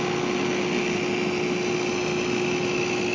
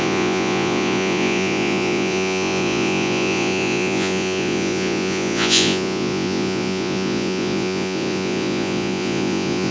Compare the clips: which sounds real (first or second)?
first